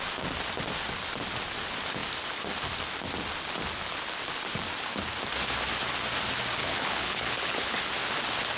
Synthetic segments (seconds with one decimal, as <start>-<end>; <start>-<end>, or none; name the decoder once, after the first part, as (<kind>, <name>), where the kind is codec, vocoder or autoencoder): 6.6-7.8 (codec, HILCodec)